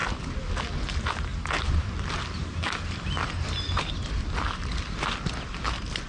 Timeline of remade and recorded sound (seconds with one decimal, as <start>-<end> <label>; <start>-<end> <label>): 0.0-6.1 recorded